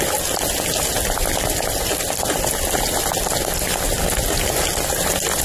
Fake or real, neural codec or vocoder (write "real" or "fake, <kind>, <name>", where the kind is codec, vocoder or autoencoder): real